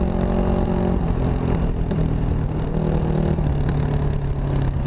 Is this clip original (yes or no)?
yes